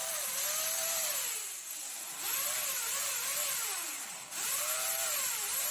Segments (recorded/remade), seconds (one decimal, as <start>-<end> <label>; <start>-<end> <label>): 0.0-3.1 remade; 3.1-4.1 recorded; 4.1-5.3 remade; 5.3-5.7 recorded